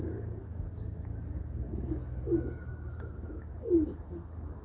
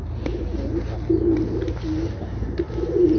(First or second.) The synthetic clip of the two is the first